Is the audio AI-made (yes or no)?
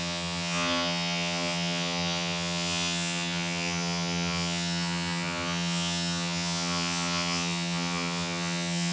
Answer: yes